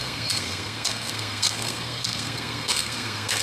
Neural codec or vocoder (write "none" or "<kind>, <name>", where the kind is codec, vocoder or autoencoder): codec, SNAC